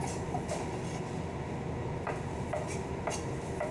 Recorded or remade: recorded